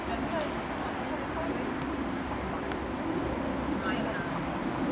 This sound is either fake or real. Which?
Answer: real